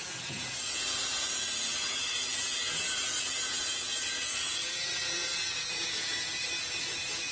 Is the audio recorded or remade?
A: remade